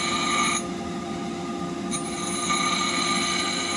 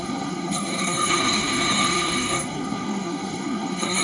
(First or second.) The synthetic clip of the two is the second